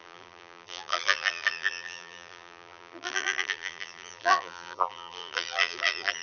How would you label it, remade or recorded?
remade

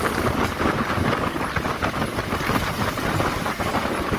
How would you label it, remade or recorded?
recorded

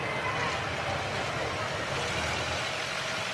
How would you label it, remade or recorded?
recorded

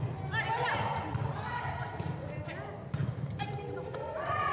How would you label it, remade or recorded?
recorded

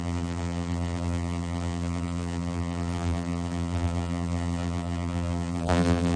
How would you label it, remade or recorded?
remade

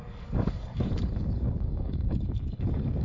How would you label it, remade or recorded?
remade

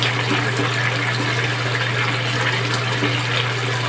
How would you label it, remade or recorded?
recorded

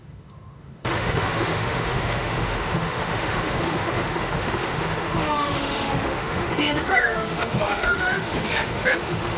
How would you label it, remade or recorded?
remade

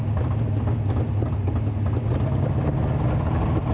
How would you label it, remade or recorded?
recorded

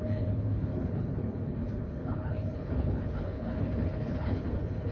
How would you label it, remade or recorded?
remade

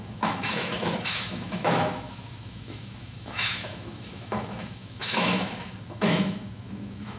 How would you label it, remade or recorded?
remade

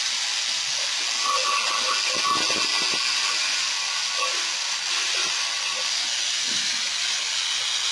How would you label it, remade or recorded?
recorded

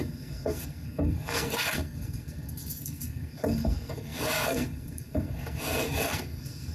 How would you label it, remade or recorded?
remade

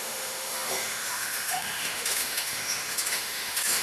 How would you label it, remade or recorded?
remade